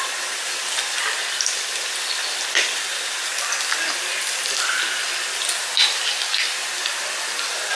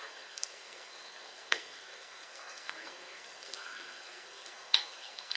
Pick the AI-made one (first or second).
second